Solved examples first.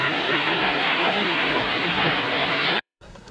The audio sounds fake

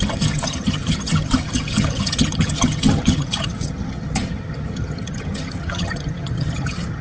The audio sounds fake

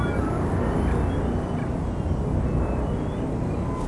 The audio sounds real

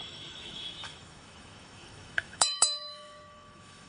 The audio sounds fake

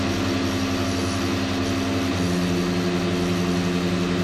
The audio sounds real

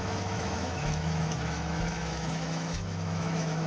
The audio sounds fake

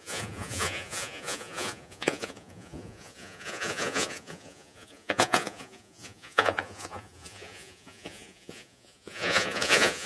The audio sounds fake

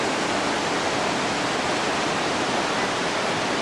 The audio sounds real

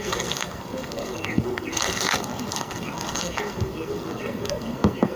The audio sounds fake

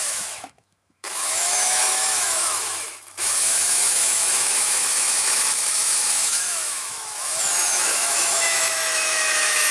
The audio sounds fake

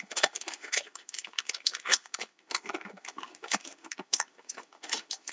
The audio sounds fake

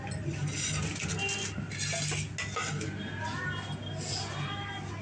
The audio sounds real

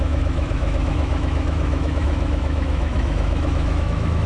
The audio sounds fake